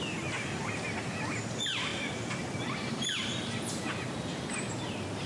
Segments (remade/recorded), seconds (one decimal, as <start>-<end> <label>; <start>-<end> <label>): 0.0-5.3 recorded